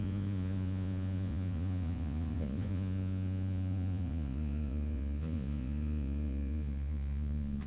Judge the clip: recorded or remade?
remade